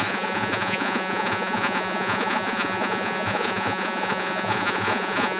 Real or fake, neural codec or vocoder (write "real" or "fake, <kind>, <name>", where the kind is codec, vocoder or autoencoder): fake, vocoder, Vocos